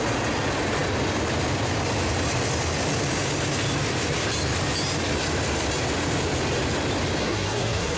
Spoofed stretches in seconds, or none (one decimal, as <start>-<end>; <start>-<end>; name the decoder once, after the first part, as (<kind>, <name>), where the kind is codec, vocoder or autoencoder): 7.2-8.0 (codec, SNAC)